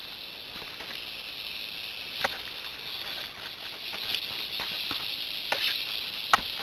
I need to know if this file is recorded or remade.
recorded